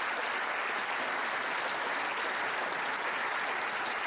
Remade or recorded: recorded